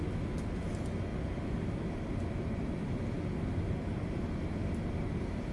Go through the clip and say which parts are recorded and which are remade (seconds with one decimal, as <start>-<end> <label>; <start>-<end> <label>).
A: 0.0-5.5 recorded